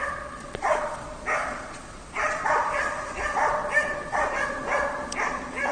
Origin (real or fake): fake